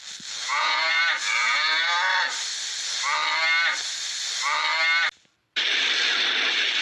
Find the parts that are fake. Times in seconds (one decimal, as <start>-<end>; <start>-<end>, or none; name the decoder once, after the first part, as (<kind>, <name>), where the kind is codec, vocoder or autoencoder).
0.4-1.0 (vocoder, Vocos); 1.4-2.1